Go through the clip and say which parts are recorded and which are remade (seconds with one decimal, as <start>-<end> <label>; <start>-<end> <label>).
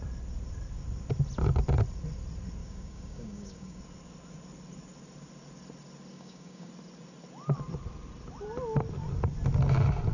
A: 0.0-2.6 recorded; 2.6-3.8 remade; 3.8-6.1 recorded; 6.1-6.7 remade; 6.7-10.1 recorded